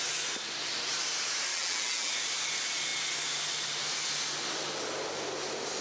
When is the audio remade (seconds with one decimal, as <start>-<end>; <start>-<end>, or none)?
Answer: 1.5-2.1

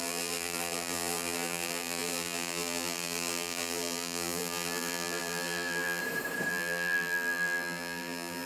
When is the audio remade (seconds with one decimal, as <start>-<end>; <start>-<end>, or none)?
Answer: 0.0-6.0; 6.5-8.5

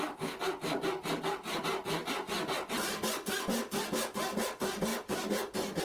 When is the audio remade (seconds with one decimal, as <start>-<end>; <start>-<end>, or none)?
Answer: none